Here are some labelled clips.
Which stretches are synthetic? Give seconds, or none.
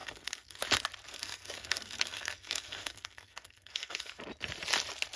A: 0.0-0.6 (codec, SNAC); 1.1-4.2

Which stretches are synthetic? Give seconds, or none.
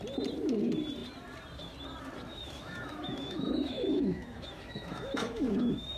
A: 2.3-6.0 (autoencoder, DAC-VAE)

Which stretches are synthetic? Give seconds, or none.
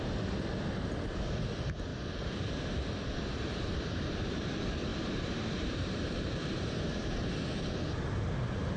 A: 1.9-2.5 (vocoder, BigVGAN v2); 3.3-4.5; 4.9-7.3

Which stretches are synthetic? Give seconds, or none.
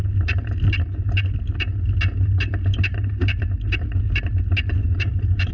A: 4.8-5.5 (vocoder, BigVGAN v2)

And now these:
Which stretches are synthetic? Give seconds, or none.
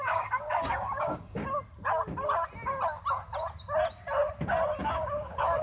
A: 0.0-1.4 (codec, DAC); 4.8-5.6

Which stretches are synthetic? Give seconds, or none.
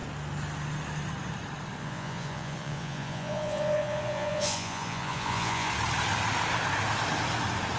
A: 1.8-5.7 (vocoder, Vocos)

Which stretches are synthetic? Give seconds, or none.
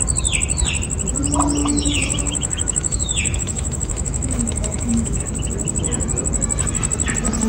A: 1.6-5.2 (autoencoder, DAC-VAE)